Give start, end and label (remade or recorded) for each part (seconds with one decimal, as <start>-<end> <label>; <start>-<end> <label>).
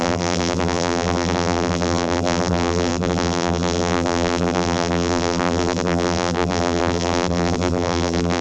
0.0-8.4 remade